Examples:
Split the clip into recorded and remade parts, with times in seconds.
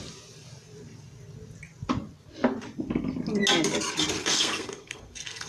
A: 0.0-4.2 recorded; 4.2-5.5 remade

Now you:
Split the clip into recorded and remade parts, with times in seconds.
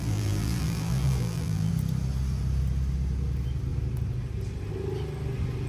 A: 0.0-1.7 remade; 1.7-5.7 recorded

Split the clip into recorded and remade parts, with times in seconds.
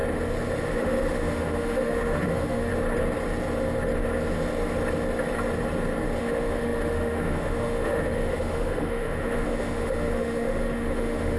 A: 0.0-0.6 recorded; 0.6-2.7 remade; 2.7-6.2 recorded; 6.2-11.4 remade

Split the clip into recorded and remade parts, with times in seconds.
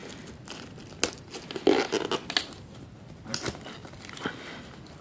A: 0.0-5.0 recorded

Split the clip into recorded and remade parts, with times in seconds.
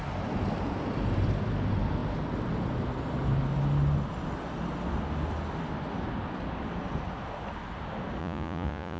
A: 0.0-8.2 recorded; 8.2-9.0 remade